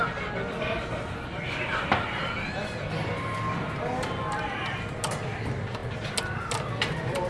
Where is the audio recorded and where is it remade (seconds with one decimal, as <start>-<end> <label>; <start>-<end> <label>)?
0.0-7.3 recorded